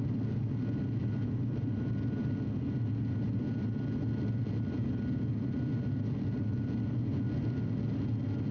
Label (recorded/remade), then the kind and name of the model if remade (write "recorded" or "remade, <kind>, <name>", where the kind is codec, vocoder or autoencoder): recorded